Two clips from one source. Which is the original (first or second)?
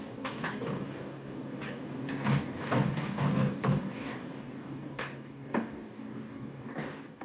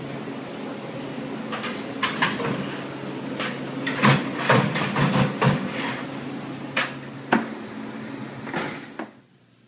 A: second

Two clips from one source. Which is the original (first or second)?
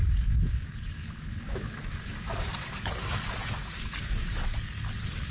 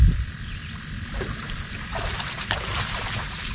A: second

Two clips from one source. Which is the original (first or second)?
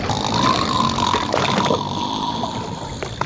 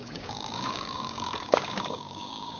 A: first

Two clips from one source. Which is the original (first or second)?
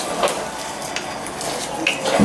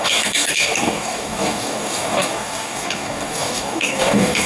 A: first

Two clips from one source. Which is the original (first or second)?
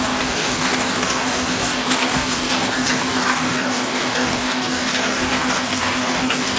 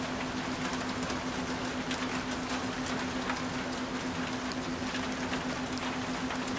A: second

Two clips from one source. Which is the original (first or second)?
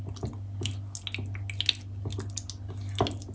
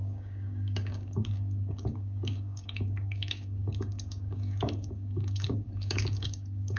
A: first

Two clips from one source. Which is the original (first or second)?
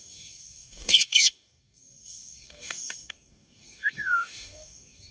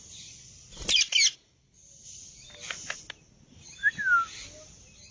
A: second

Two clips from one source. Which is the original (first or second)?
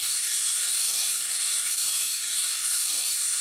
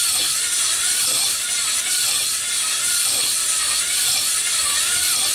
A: second